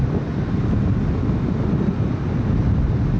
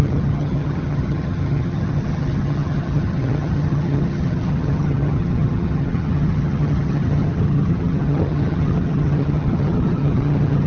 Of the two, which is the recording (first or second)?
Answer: first